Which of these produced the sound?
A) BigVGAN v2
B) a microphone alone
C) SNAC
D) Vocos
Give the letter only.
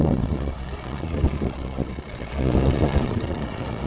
D